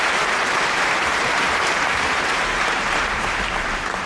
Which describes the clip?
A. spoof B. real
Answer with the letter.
A